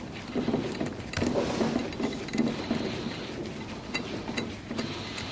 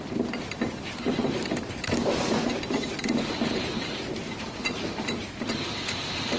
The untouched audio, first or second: first